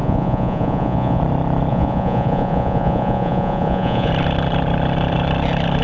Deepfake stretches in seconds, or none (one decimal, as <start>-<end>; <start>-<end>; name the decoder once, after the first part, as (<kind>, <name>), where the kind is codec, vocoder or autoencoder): 0.0-1.2 (vocoder, Vocos); 1.7-4.1